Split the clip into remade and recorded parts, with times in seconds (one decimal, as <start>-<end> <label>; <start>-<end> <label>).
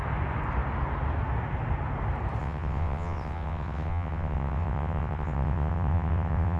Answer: 0.0-2.4 recorded; 2.4-6.6 remade